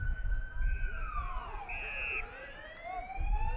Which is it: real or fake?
real